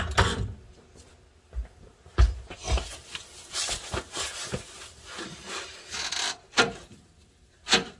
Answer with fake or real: real